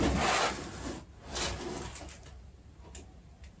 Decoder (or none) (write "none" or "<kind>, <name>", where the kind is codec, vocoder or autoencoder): none